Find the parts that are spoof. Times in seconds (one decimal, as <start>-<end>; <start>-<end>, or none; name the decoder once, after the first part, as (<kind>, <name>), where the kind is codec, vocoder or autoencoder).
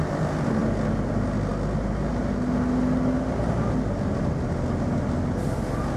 none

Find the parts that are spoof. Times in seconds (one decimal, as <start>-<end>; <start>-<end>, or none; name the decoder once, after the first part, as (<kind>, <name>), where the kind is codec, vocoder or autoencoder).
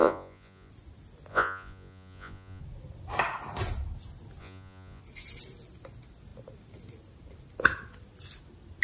0.0-0.7 (vocoder, Vocos); 1.3-2.6; 4.4-5.0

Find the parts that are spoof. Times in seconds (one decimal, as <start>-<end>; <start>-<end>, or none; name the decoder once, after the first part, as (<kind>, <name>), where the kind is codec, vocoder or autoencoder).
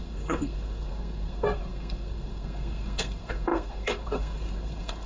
0.0-5.1 (codec, SNAC)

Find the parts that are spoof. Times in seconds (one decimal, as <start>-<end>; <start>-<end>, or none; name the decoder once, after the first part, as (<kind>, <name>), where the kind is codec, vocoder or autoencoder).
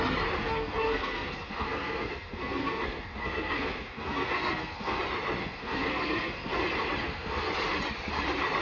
0.4-5.0 (codec, SNAC); 5.4-6.6; 7.0-7.5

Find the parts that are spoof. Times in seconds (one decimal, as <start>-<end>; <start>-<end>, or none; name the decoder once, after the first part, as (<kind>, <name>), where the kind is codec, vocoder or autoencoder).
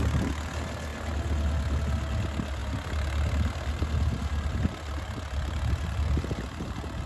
none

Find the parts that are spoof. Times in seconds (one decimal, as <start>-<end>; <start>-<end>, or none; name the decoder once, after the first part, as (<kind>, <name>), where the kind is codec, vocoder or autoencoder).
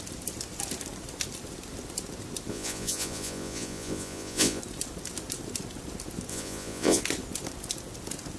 2.5-4.6 (vocoder, Vocos); 6.3-7.0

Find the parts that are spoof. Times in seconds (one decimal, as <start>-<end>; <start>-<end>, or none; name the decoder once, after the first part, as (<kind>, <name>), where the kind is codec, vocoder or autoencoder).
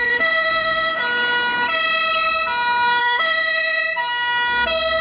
0.0-1.0 (autoencoder, DAC-VAE); 3.0-3.8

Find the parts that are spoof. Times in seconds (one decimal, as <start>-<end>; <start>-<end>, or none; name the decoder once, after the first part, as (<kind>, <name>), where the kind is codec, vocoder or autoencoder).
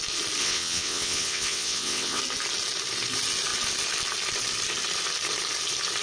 0.4-2.2 (vocoder, WaveNeXt)